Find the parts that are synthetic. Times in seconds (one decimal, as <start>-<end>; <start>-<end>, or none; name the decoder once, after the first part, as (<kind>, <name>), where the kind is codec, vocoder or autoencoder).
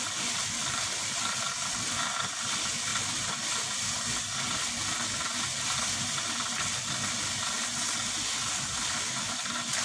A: none